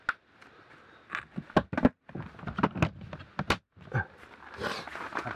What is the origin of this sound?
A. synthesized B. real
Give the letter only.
B